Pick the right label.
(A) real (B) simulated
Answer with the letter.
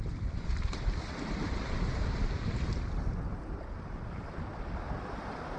B